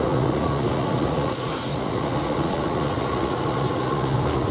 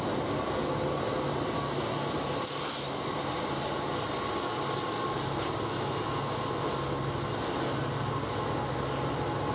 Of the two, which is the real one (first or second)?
second